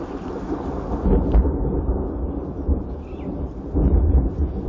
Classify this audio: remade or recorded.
recorded